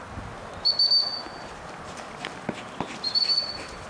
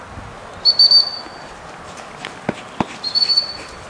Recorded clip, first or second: second